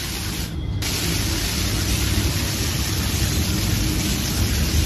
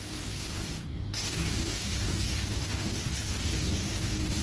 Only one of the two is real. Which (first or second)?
first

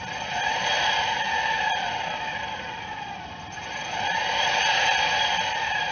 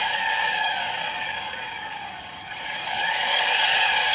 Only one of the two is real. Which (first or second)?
first